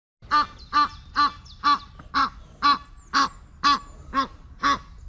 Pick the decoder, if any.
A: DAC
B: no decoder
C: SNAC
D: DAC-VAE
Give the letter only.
B